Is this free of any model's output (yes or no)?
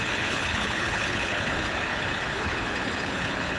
no